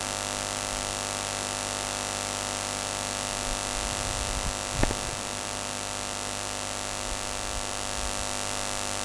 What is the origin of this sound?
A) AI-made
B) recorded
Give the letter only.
B